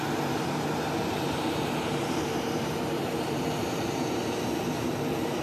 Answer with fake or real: fake